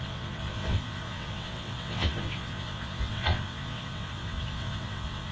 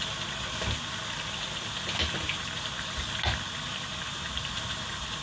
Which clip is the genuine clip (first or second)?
second